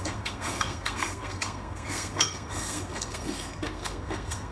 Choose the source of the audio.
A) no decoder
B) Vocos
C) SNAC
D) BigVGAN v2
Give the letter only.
C